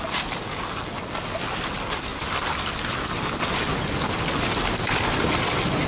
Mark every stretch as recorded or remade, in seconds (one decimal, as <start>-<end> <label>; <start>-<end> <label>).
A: 0.0-5.9 recorded